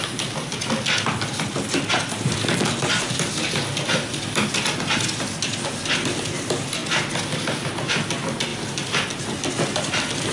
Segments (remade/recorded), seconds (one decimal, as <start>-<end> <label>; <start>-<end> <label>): 0.0-10.3 recorded